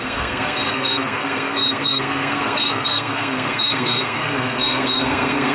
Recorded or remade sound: remade